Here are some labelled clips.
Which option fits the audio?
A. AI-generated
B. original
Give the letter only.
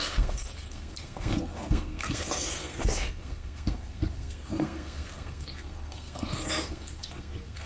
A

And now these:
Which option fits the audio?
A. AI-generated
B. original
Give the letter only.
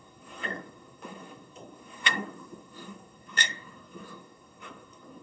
A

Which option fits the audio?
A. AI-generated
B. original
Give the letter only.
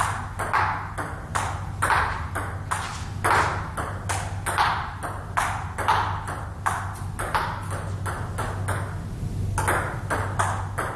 B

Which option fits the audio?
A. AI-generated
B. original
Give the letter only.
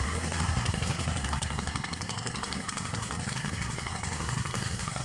A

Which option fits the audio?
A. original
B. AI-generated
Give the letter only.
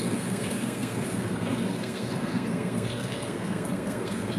B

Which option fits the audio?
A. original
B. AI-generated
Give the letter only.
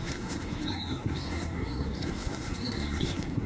B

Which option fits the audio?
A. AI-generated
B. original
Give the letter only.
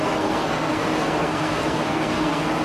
A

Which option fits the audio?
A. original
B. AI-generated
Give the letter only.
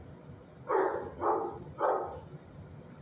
A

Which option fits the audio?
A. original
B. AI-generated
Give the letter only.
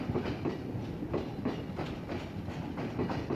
A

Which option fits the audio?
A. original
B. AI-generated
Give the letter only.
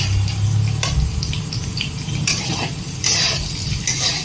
A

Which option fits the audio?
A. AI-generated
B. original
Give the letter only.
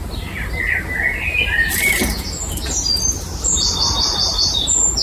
B